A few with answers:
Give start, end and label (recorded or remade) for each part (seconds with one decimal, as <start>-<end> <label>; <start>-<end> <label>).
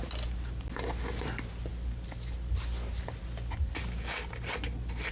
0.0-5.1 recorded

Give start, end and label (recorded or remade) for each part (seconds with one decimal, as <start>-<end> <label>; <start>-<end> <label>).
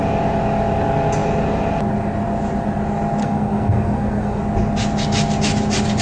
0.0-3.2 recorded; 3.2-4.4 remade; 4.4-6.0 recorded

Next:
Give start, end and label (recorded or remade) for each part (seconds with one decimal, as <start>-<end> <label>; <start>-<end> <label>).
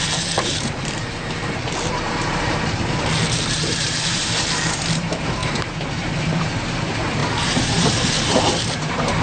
0.0-9.2 remade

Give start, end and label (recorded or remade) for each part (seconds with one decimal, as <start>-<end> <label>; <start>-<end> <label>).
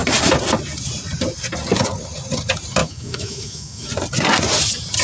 0.0-2.8 recorded; 2.8-3.9 remade; 3.9-5.0 recorded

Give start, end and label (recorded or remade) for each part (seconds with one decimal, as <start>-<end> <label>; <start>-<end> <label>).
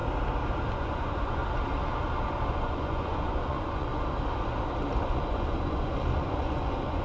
0.0-0.7 recorded; 0.7-1.4 remade; 1.4-2.5 recorded; 2.5-3.9 remade; 3.9-5.0 recorded; 5.0-7.0 remade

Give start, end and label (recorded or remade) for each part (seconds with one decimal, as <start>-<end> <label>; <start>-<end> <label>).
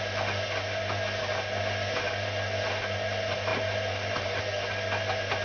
0.0-3.5 recorded; 3.5-4.4 remade; 4.4-5.4 recorded